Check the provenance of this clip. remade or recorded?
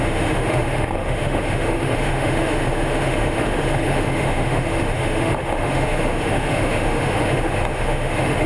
remade